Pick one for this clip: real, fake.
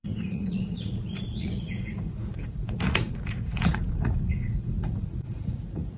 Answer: fake